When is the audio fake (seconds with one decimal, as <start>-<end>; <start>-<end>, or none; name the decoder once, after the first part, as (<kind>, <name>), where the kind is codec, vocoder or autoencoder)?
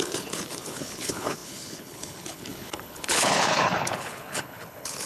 0.0-5.1 (codec, HILCodec)